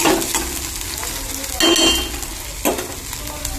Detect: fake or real real